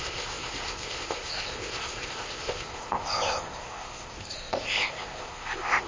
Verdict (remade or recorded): remade